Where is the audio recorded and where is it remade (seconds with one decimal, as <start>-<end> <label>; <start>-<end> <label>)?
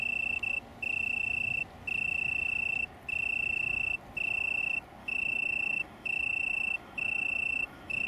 0.0-5.0 recorded; 5.0-8.1 remade